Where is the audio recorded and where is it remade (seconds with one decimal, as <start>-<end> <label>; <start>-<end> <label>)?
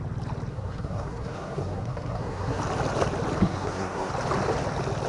0.0-0.5 recorded; 0.5-2.6 remade; 2.6-3.4 recorded; 3.4-4.1 remade; 4.1-5.1 recorded